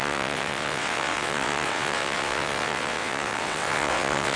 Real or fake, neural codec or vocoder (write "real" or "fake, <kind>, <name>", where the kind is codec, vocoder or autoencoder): fake, vocoder, WaveNeXt